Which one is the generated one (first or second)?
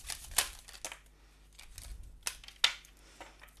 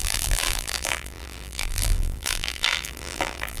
second